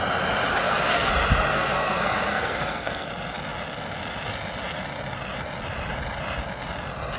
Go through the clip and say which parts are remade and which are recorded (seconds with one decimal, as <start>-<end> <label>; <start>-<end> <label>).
0.0-0.5 recorded; 0.5-1.1 remade; 1.1-1.5 recorded; 1.5-3.1 remade; 3.1-7.2 recorded